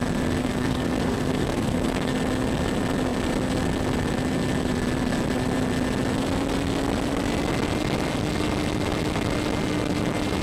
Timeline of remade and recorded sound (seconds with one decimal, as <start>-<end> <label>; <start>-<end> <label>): 0.0-0.4 recorded; 0.4-2.1 remade; 2.1-10.4 recorded